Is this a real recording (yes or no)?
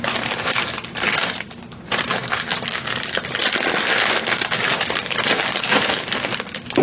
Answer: yes